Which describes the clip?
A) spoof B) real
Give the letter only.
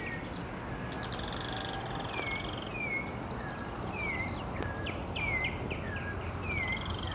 B